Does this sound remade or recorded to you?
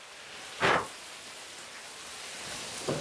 recorded